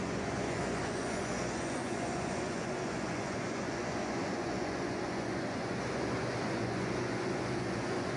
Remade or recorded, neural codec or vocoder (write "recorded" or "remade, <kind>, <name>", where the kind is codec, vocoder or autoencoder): remade, vocoder, Vocos